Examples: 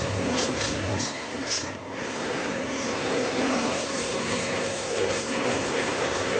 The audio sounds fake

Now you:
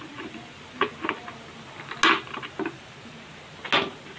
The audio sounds real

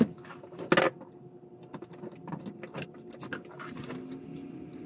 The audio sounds real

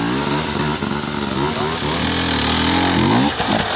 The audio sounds real